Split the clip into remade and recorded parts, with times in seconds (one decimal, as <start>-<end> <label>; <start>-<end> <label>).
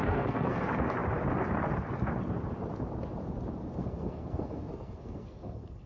0.0-0.6 remade; 0.6-3.7 recorded; 3.7-5.9 remade